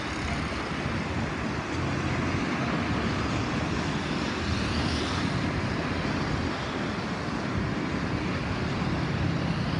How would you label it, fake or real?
real